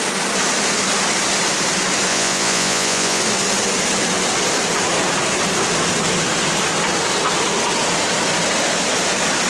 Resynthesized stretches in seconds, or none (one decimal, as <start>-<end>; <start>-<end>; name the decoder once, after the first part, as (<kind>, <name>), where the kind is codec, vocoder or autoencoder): 2.1-3.2 (vocoder, Vocos)